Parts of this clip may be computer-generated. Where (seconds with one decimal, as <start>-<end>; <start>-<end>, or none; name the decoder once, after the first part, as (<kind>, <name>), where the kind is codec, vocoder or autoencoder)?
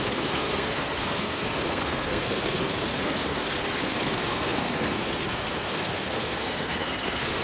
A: 0.0-7.4 (codec, SNAC)